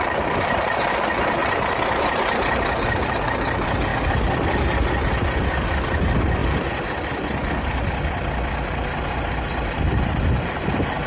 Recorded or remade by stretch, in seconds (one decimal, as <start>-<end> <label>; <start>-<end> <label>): 0.0-3.9 remade; 3.9-6.0 recorded; 6.0-6.4 remade; 6.4-10.0 recorded; 10.0-11.1 remade